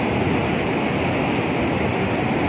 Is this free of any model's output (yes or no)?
yes